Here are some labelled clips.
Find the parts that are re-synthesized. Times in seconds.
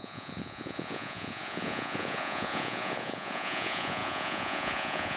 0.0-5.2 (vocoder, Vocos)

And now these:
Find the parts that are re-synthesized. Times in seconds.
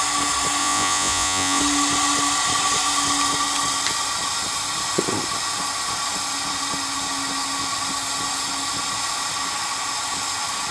0.6-1.6 (vocoder, Vocos)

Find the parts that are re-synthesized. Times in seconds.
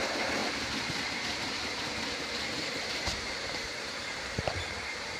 0.0-0.4 (vocoder, BigVGAN v2); 1.2-5.2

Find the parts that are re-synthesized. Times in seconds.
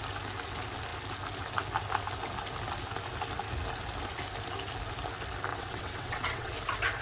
5.5-6.5 (vocoder, WaveNeXt)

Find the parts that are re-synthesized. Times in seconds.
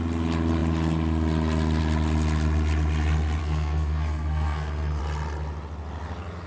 3.4-5.0 (codec, SNAC)